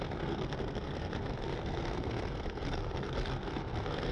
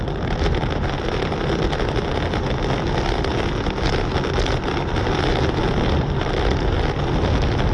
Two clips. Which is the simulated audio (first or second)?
first